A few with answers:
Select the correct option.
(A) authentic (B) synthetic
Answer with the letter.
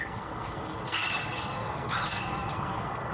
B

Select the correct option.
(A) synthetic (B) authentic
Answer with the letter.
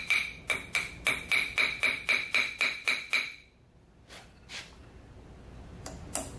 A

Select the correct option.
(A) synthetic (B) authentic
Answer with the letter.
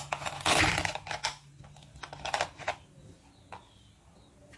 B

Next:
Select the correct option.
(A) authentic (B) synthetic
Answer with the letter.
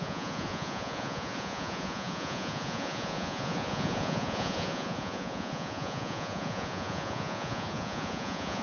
B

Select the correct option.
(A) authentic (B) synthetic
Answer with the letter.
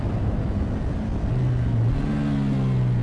A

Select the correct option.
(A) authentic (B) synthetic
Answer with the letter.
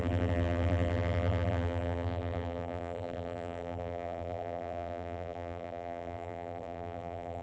B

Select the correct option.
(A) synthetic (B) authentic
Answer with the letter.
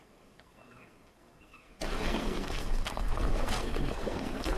A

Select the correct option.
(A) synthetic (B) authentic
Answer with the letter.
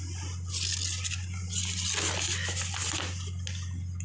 B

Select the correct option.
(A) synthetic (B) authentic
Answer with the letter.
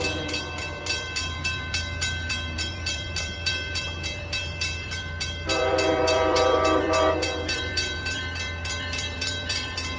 A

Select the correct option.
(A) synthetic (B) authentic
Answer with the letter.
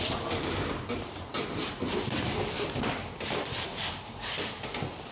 A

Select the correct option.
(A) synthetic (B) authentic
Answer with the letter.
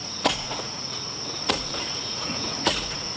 A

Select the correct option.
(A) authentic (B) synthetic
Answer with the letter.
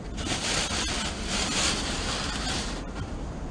A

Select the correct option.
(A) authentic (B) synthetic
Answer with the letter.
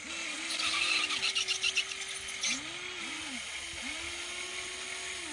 A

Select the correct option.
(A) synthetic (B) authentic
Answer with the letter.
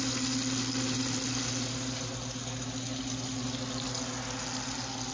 B